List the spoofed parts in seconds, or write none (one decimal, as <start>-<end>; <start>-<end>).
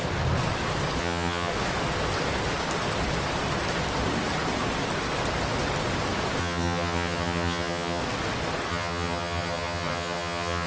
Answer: 1.0-1.5; 6.4-8.0; 8.7-10.7